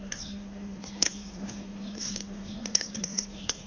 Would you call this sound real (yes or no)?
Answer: no